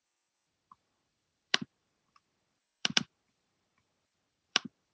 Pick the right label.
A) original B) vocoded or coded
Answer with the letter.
B